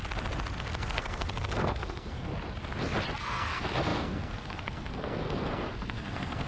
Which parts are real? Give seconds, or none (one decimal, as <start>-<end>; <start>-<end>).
0.0-0.6; 2.3-3.2